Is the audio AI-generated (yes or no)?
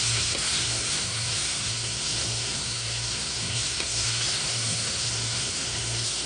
yes